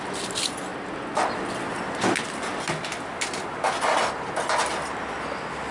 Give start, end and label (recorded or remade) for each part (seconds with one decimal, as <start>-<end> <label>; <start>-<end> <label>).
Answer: 0.0-5.7 recorded